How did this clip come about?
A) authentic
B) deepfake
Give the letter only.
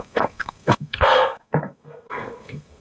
B